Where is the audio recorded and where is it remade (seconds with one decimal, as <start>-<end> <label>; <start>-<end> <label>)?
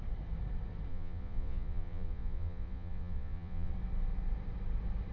0.0-0.9 recorded; 0.9-3.7 remade; 3.7-5.1 recorded